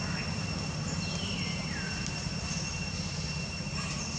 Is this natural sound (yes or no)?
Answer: yes